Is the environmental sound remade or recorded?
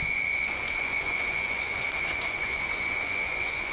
remade